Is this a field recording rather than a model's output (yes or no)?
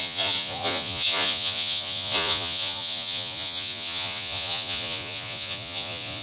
no